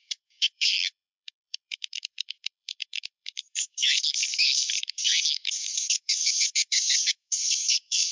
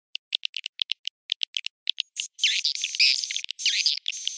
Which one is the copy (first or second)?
first